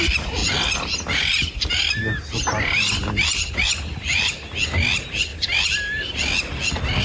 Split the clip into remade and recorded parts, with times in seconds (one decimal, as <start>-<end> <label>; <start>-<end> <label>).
0.0-7.0 recorded